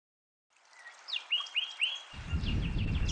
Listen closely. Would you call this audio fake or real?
real